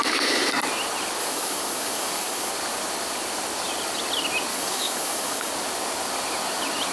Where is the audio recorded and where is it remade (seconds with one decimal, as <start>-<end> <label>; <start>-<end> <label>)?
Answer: 0.0-1.2 recorded; 1.2-2.5 remade; 2.5-4.5 recorded; 4.5-5.5 remade; 5.5-6.9 recorded